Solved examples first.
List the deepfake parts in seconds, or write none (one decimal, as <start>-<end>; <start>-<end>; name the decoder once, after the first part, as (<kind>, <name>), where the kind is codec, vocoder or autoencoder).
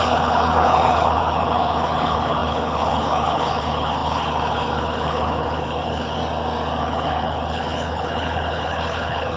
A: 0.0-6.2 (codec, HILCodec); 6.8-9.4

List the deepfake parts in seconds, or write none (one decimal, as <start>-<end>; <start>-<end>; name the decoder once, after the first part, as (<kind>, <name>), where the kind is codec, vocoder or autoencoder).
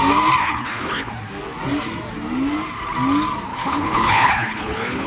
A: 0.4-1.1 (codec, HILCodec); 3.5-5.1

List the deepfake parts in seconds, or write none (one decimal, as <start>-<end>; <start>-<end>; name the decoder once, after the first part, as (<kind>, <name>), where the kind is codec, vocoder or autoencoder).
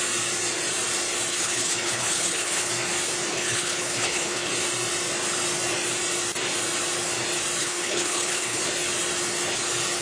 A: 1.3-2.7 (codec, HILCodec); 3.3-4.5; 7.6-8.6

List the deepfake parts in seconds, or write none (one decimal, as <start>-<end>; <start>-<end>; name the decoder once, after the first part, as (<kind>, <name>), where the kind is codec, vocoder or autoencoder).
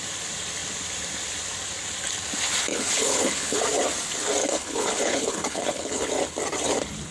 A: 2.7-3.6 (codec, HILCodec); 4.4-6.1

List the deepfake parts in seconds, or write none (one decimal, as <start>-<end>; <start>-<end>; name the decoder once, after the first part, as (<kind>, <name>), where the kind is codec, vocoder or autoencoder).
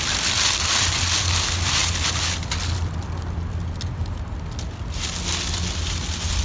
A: none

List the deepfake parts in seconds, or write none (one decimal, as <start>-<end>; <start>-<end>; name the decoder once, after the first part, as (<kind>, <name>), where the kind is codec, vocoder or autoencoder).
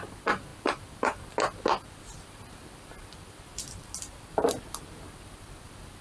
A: none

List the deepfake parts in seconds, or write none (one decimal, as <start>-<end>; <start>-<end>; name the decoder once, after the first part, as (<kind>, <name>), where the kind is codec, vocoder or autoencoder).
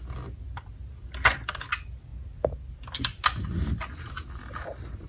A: none